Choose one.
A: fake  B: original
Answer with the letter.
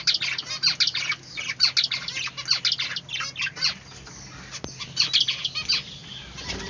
B